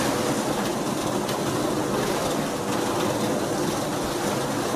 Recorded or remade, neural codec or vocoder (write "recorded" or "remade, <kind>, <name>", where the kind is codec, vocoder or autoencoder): remade, vocoder, BigVGAN v2